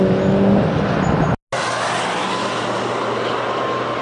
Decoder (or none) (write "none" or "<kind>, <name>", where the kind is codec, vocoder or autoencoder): none